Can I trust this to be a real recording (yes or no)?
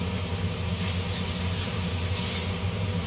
yes